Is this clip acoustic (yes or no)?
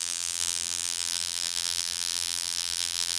no